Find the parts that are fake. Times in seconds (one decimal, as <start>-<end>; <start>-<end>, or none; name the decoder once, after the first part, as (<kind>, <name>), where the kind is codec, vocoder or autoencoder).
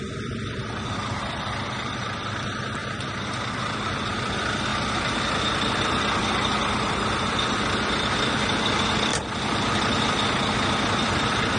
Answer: 0.0-2.8 (vocoder, BigVGAN v2); 3.5-4.7; 6.7-11.6